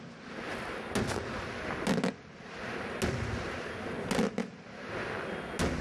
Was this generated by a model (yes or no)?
no